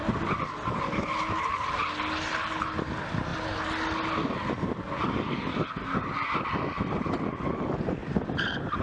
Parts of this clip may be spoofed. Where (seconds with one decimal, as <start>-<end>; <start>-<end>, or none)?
8.0-8.8